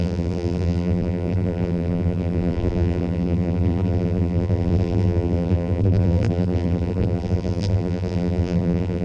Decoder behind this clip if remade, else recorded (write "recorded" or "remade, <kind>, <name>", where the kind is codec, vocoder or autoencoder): remade, vocoder, BigVGAN v2